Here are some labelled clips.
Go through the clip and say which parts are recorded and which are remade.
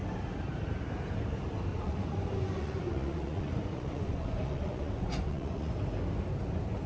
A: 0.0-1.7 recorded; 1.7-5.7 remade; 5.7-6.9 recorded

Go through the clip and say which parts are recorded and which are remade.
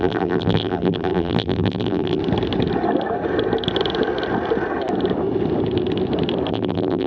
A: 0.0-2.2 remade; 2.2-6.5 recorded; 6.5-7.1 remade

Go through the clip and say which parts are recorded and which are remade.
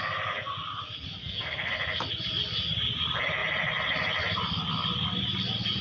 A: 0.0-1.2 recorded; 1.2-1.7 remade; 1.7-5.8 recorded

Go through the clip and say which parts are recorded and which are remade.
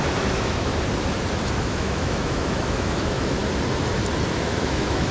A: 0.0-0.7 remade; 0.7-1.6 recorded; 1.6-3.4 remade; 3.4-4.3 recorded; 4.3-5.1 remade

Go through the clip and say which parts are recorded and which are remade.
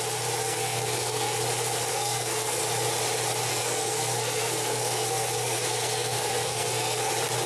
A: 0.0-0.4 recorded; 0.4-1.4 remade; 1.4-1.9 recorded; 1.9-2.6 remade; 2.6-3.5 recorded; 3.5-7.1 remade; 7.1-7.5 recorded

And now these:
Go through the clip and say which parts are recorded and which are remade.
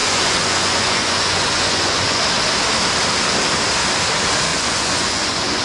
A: 0.0-2.2 remade; 2.2-4.5 recorded; 4.5-5.6 remade